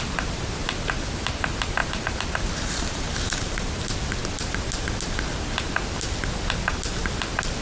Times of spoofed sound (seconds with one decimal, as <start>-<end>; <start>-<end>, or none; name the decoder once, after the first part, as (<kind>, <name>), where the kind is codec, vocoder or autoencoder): 1.8-3.7 (vocoder, BigVGAN v2)